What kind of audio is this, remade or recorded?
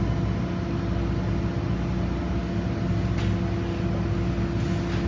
recorded